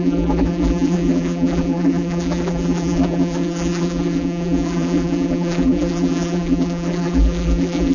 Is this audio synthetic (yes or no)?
yes